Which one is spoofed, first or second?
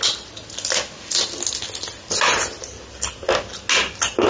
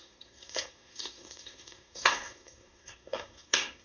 second